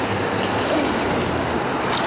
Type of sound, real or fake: real